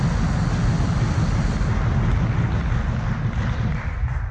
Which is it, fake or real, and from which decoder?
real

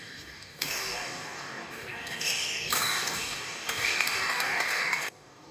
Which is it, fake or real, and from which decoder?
fake, codec, DAC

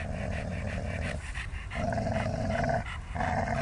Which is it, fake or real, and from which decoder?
real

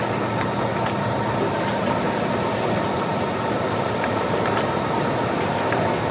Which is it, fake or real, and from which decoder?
real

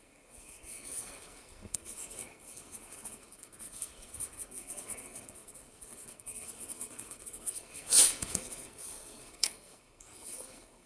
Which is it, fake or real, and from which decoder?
fake, codec, SNAC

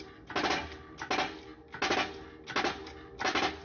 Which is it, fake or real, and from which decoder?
real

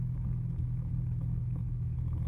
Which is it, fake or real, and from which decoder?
fake, autoencoder, DAC-VAE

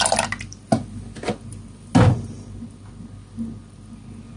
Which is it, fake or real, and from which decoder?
real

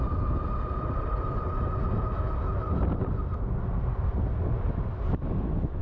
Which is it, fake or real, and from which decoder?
real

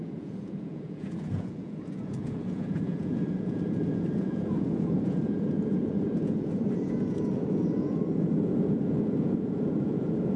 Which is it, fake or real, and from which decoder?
fake, vocoder, Vocos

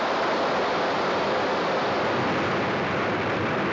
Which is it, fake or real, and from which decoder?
real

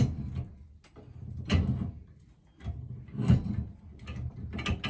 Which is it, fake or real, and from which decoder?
real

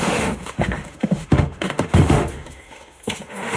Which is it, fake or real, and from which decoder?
fake, autoencoder, DAC-VAE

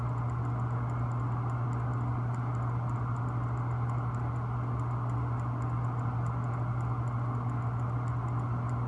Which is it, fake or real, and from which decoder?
real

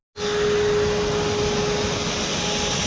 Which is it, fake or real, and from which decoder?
real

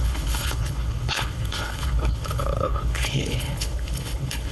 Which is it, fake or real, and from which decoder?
fake, codec, HILCodec